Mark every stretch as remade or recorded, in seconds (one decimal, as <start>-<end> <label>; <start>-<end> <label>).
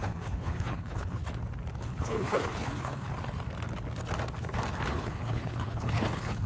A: 0.0-1.2 remade; 1.2-1.8 recorded; 1.8-3.1 remade; 3.1-4.9 recorded; 4.9-6.5 remade